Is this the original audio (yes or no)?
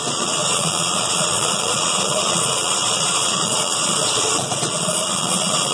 no